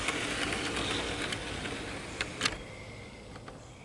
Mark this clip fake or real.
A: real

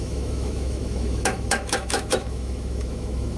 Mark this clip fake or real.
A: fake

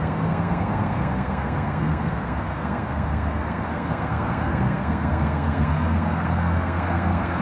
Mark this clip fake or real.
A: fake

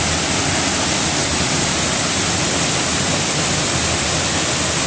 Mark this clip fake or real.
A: real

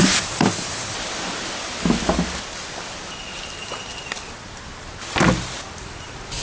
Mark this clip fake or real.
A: real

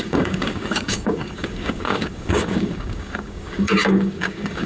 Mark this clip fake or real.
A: fake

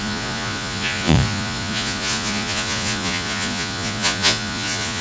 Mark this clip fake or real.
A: fake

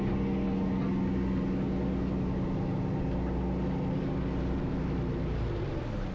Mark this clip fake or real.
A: real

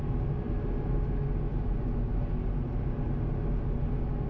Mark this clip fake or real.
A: real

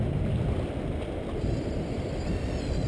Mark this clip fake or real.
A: real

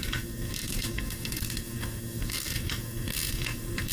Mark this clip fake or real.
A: fake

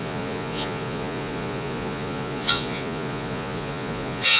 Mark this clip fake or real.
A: fake